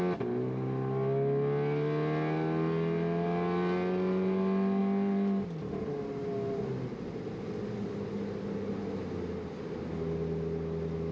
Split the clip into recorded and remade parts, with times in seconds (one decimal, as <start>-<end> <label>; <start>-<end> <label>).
0.0-11.1 recorded